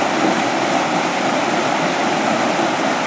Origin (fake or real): real